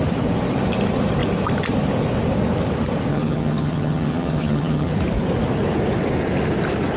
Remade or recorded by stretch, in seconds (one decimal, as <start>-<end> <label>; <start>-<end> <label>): 0.0-3.1 recorded; 3.1-4.9 remade; 4.9-7.0 recorded